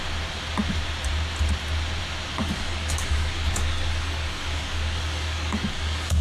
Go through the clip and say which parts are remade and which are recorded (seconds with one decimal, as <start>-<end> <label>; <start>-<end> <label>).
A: 0.0-2.4 recorded; 2.4-6.2 remade